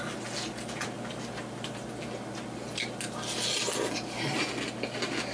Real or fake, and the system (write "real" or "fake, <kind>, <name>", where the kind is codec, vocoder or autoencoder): real